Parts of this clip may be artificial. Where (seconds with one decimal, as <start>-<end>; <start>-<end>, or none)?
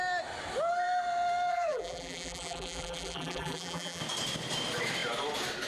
1.5-4.0